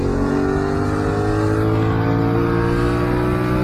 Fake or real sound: real